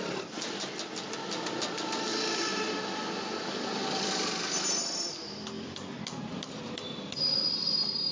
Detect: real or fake real